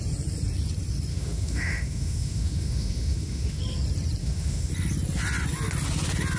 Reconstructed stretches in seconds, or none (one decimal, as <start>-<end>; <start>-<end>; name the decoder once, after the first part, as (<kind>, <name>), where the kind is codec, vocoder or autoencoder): 1.1-3.6 (autoencoder, DAC-VAE); 4.2-4.7